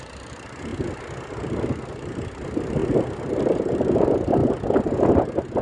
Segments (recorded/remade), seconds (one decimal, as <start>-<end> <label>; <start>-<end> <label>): 0.0-0.7 remade; 0.7-1.9 recorded; 1.9-2.8 remade; 2.8-3.3 recorded; 3.3-4.4 remade; 4.4-5.1 recorded; 5.1-5.6 remade